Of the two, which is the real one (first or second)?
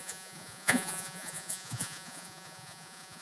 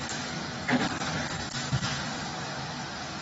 second